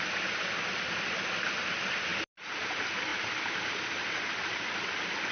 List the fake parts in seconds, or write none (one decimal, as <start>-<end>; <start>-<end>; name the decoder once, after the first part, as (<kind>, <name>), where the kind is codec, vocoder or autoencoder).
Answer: none